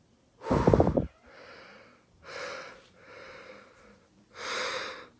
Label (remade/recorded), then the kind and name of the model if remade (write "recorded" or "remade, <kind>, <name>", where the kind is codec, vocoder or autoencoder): recorded